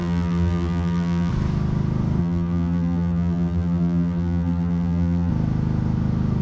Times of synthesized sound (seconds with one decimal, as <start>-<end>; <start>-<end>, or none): 0.0-1.3; 2.2-5.3